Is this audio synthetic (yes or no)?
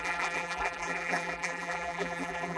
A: yes